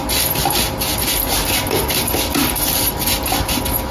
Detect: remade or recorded recorded